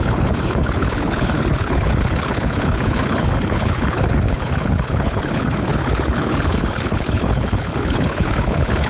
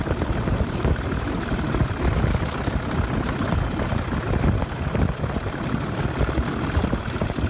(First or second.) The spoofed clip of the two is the first